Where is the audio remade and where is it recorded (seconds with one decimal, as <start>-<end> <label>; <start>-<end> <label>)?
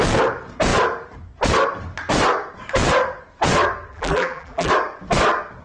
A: 0.0-3.9 recorded; 3.9-4.7 remade; 4.7-5.6 recorded